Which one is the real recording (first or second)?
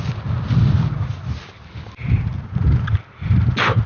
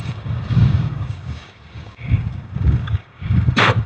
first